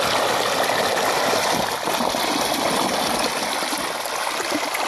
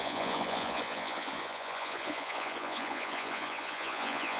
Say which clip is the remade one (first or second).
second